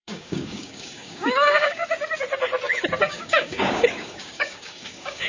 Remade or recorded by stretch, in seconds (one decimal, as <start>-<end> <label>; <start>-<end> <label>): 0.0-1.8 remade; 1.8-3.0 recorded; 3.0-5.3 remade